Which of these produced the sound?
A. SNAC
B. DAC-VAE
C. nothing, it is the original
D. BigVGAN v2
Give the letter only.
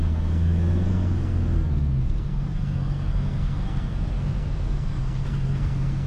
A